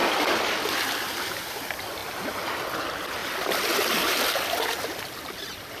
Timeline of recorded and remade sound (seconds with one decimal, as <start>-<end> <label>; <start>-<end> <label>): 0.0-1.3 recorded; 1.3-2.0 remade; 2.0-2.8 recorded; 2.8-5.8 remade